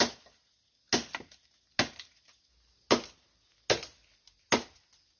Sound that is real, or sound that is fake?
real